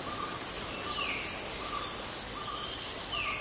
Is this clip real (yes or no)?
yes